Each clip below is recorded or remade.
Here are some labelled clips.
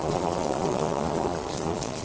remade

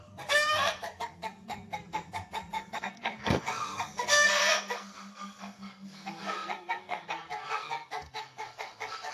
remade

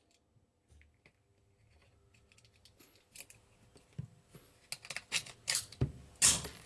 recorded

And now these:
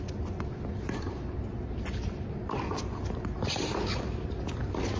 recorded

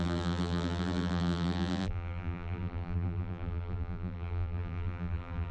remade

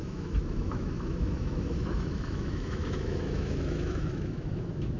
remade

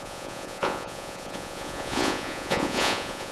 remade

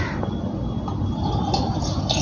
recorded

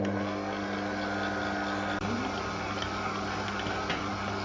recorded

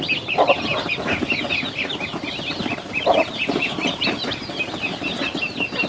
remade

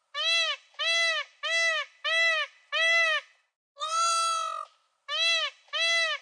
recorded